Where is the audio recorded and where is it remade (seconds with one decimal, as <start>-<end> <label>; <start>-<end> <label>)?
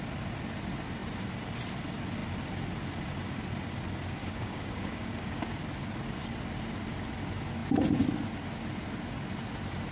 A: 0.0-4.2 recorded; 4.2-5.6 remade; 5.6-9.9 recorded